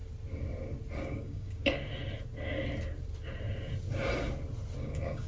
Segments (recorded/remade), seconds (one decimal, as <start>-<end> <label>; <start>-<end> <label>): 0.0-1.0 recorded; 1.0-1.6 remade; 1.6-4.8 recorded; 4.8-5.3 remade